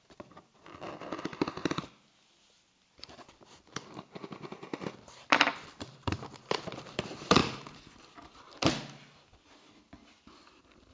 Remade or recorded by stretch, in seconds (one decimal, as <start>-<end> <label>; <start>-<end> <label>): 0.0-1.6 remade; 1.6-2.9 recorded; 2.9-7.4 remade; 7.4-10.9 recorded